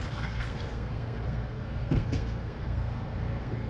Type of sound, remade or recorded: remade